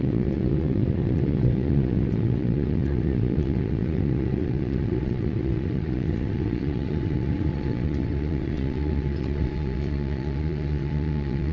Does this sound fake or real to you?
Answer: fake